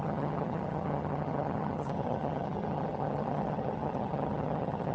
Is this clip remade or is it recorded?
remade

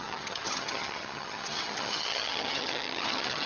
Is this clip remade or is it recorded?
remade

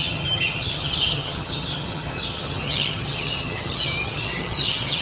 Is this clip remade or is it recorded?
remade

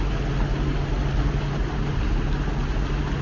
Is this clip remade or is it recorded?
recorded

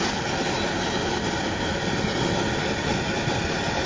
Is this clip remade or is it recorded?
recorded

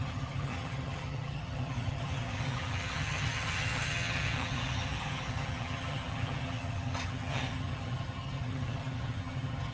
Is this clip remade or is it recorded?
remade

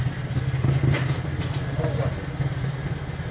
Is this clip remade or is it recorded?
recorded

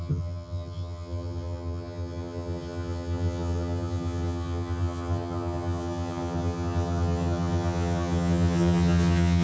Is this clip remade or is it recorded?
remade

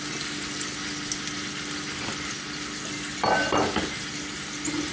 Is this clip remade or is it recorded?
recorded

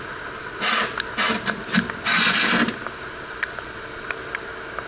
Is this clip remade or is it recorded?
recorded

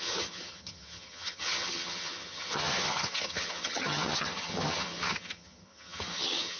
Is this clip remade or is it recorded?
remade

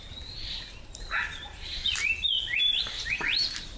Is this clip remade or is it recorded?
recorded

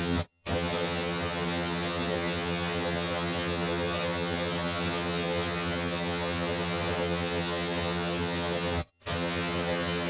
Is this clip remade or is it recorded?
remade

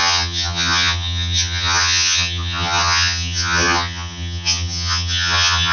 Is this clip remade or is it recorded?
remade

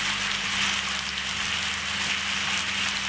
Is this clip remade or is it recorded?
recorded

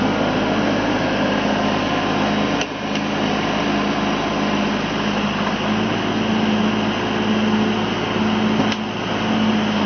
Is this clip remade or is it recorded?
recorded